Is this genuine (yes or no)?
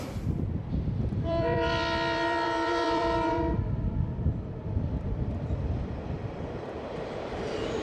no